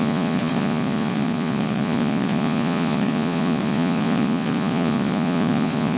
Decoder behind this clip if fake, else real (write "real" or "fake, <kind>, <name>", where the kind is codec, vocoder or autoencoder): fake, vocoder, Vocos